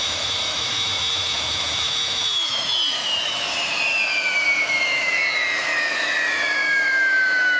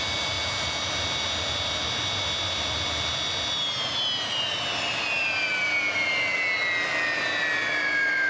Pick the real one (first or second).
second